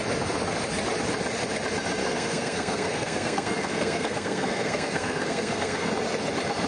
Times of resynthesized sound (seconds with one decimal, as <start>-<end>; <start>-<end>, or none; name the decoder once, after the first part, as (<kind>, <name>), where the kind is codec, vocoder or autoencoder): 2.0-5.9 (codec, SNAC)